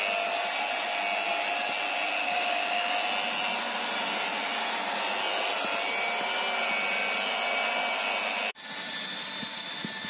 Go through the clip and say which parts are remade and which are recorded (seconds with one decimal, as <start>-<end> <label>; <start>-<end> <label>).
0.0-2.2 recorded; 2.2-2.9 remade; 2.9-10.1 recorded